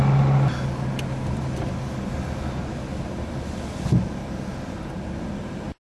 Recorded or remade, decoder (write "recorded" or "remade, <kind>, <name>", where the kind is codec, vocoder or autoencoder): recorded